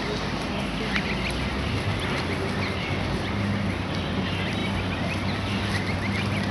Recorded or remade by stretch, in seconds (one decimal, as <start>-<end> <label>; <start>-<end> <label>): 0.0-6.5 recorded